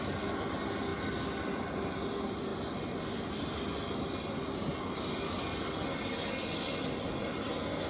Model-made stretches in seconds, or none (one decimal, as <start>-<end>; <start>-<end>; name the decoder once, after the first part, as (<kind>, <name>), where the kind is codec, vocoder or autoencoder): none